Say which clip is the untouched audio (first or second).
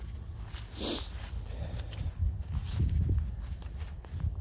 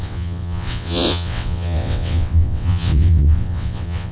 first